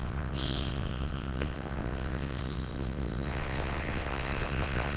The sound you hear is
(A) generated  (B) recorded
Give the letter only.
A